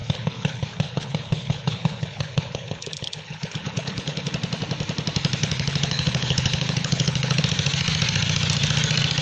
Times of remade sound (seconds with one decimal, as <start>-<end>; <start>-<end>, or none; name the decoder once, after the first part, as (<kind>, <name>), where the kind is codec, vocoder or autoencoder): 0.0-4.3 (codec, HILCodec); 5.4-7.4